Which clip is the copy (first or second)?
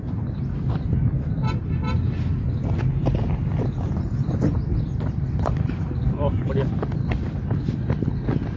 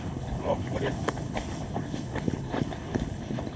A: second